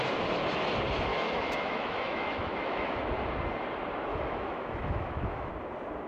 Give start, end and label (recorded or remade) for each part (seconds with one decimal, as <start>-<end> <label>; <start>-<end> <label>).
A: 0.0-1.1 recorded; 1.1-3.0 remade; 3.0-4.1 recorded; 4.1-5.5 remade; 5.5-6.1 recorded